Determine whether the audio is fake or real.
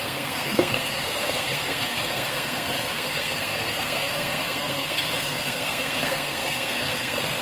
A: fake